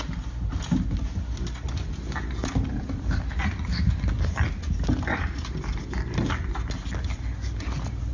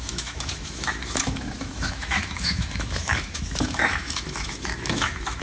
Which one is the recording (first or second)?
first